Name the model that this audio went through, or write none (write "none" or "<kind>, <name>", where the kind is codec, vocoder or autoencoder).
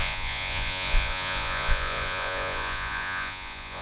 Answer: vocoder, Vocos